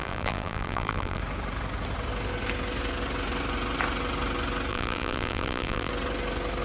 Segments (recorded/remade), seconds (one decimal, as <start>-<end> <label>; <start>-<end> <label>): 0.0-1.2 remade; 1.2-4.7 recorded; 4.7-5.9 remade; 5.9-6.6 recorded